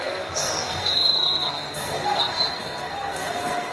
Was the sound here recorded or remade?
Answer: remade